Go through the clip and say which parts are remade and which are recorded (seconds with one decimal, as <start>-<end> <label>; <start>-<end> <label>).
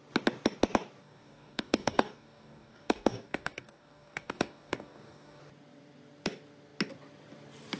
0.0-1.0 recorded; 1.0-5.4 remade; 5.4-7.8 recorded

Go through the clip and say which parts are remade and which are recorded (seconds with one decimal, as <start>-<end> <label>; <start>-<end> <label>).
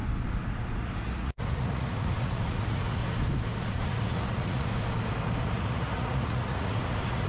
0.0-0.8 recorded; 0.8-3.0 remade; 3.0-3.7 recorded; 3.7-4.7 remade; 4.7-5.4 recorded; 5.4-7.3 remade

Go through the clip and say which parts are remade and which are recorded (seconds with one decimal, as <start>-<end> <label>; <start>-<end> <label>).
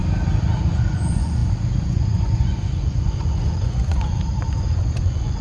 0.0-0.6 recorded; 0.6-5.4 remade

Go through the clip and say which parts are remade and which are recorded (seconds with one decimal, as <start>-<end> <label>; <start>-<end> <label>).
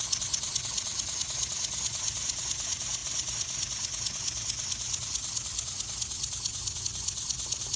0.0-7.8 recorded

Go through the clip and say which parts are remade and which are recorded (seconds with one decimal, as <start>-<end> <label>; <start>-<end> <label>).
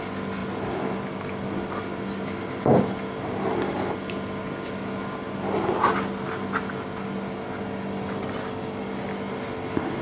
0.0-10.0 recorded